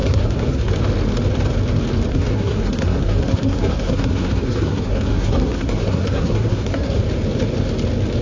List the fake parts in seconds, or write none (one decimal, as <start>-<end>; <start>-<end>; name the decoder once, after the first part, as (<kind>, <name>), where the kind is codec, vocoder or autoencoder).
0.0-0.7 (codec, SNAC); 2.1-7.0